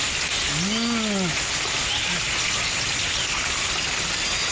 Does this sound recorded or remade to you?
recorded